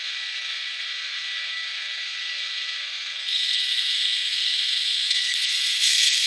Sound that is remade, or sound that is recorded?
remade